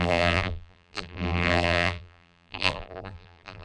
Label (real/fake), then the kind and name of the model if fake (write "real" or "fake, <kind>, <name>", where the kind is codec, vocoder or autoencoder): fake, vocoder, BigVGAN v2